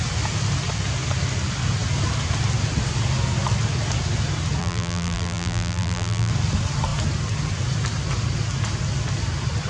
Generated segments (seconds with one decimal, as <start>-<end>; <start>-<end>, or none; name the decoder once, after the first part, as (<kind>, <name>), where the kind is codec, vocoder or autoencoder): 4.6-6.3 (vocoder, BigVGAN v2)